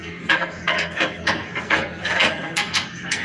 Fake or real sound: fake